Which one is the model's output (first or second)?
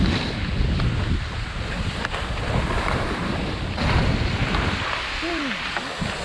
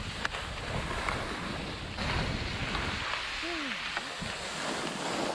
first